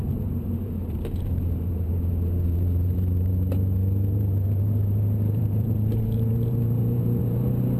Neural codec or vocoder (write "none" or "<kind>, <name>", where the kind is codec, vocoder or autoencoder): vocoder, BigVGAN v2